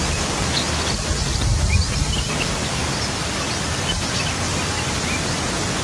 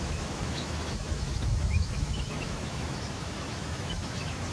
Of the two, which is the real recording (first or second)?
first